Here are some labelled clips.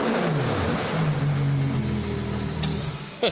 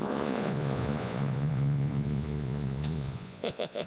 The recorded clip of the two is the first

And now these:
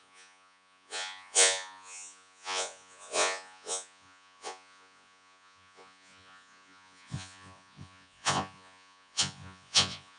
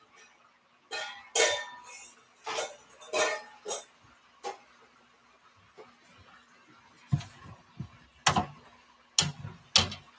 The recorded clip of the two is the second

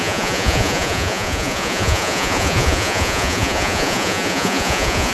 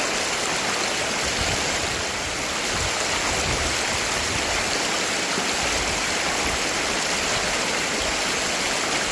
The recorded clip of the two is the second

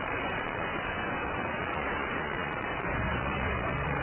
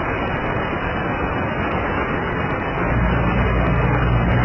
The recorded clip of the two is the second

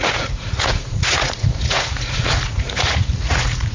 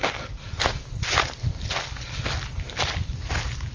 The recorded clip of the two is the second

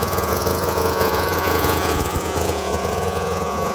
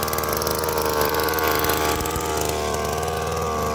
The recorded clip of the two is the second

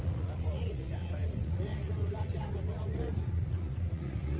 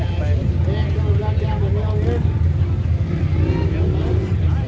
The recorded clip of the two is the second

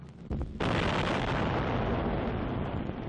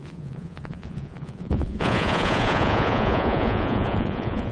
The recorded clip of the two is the first